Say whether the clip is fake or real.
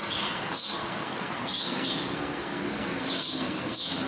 fake